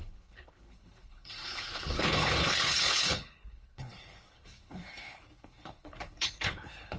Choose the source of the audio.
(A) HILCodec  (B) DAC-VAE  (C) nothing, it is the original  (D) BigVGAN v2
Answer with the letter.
A